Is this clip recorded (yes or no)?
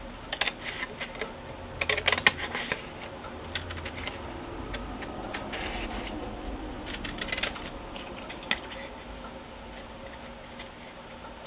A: yes